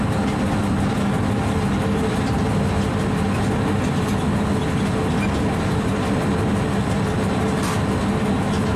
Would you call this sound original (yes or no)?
yes